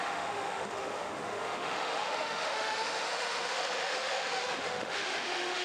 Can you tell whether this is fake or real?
fake